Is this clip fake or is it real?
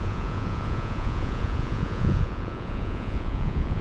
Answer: fake